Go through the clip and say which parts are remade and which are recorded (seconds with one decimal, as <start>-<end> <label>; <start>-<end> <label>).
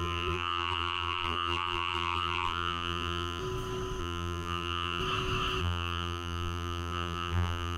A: 0.0-3.4 remade; 3.4-4.0 recorded; 4.0-5.0 remade; 5.0-5.6 recorded; 5.6-7.8 remade